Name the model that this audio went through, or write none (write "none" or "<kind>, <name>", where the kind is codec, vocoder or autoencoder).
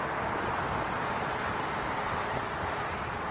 none